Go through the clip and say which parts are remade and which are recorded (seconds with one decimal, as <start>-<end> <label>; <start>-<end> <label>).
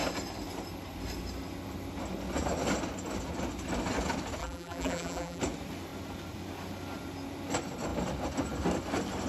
0.0-4.4 recorded; 4.4-5.4 remade; 5.4-9.3 recorded